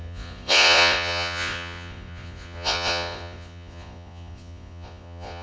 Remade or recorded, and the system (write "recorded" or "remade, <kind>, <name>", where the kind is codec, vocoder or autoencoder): remade, vocoder, Vocos